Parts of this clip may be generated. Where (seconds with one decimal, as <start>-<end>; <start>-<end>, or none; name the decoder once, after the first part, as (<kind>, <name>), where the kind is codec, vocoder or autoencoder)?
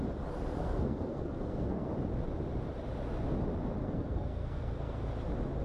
0.6-1.9 (codec, SNAC); 3.8-5.1